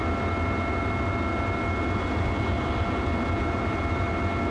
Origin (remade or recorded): recorded